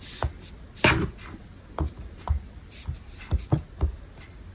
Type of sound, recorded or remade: recorded